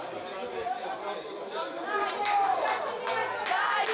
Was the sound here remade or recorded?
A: recorded